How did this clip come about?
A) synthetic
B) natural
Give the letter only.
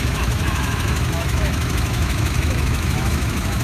A